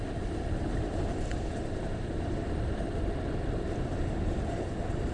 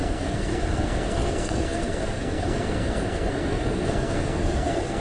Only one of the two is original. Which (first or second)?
first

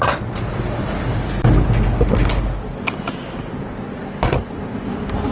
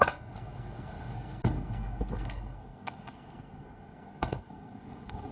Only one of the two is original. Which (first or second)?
first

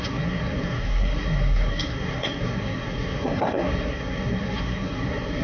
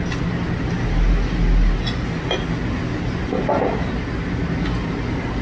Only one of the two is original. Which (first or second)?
second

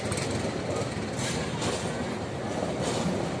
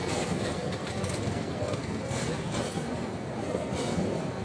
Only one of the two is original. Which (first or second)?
first